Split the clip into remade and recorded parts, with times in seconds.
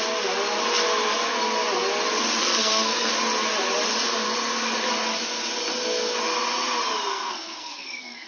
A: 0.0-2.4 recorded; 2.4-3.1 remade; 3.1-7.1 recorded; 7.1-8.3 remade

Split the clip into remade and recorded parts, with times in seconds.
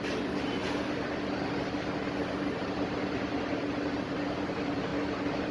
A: 0.0-5.5 recorded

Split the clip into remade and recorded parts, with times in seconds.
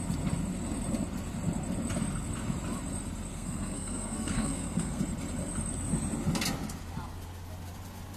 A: 0.0-3.3 recorded; 3.3-5.0 remade; 5.0-8.2 recorded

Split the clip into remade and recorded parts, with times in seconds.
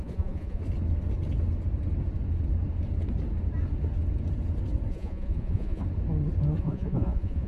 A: 0.0-0.6 remade; 0.6-4.9 recorded; 4.9-5.8 remade; 5.8-6.6 recorded; 6.6-7.5 remade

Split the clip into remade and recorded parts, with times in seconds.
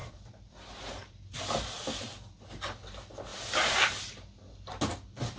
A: 0.0-5.4 recorded